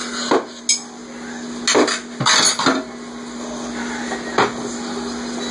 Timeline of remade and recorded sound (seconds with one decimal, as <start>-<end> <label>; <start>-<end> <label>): 0.0-5.5 recorded